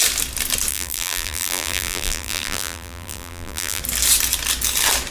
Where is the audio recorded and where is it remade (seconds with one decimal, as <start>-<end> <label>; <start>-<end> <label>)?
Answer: 0.0-0.7 recorded; 0.7-3.8 remade; 3.8-5.1 recorded